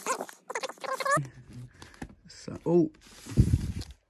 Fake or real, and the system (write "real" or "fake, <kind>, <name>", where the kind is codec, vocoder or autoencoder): real